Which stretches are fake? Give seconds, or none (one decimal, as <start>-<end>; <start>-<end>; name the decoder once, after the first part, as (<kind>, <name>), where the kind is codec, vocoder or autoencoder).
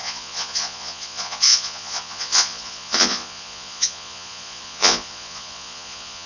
0.0-6.3 (vocoder, Vocos)